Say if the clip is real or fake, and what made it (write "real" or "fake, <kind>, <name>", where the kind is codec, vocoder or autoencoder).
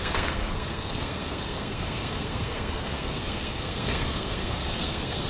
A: fake, codec, SNAC